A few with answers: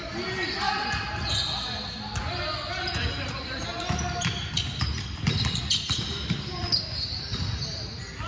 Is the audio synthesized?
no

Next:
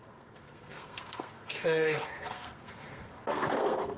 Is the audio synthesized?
yes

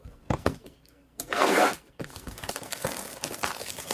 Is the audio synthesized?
yes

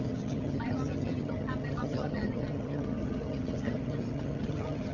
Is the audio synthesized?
yes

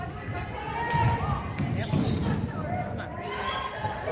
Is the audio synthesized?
no